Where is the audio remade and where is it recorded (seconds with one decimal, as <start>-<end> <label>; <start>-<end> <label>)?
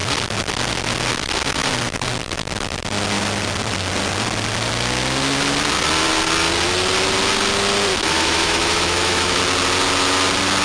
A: 0.0-7.9 recorded; 7.9-9.4 remade; 9.4-10.6 recorded